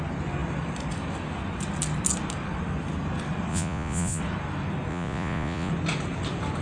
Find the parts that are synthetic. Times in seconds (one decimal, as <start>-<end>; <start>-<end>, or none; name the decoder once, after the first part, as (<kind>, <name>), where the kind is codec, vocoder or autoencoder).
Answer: 3.5-4.2 (vocoder, Vocos); 4.9-5.7